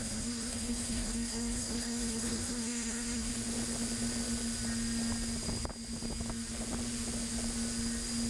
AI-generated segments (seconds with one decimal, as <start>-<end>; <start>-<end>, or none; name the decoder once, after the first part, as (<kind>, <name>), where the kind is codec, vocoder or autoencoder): 0.0-3.3 (codec, SNAC)